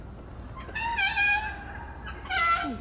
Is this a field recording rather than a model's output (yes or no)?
yes